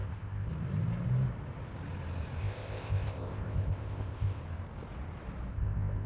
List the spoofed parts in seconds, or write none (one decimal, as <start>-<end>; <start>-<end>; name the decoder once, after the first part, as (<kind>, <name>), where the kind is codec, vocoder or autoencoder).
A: 0.0-0.5 (codec, ZipCodec); 2.4-4.4; 5.5-6.1